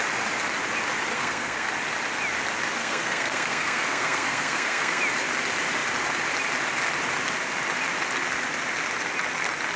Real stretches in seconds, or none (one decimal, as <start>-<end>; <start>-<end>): 0.0-1.1; 1.7-2.8; 5.0-9.8